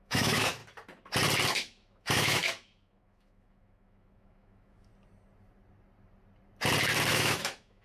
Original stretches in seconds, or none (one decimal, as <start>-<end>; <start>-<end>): 0.6-1.5; 4.9-7.1